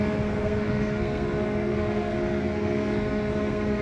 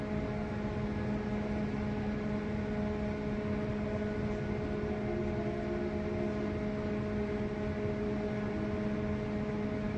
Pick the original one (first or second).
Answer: second